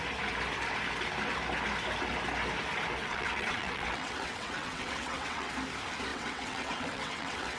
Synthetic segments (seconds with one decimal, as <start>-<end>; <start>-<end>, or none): 3.0-5.5; 6.1-7.6